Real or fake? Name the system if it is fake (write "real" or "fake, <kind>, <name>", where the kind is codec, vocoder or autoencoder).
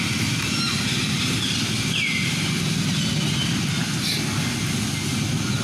real